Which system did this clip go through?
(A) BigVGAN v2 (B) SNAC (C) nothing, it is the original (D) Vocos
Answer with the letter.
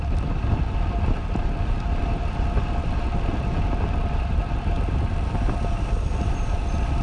C